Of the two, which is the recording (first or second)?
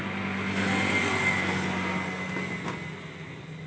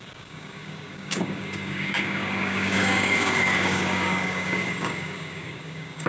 first